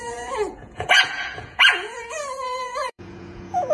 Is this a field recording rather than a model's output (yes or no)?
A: no